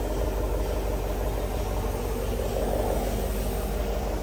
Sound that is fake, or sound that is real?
real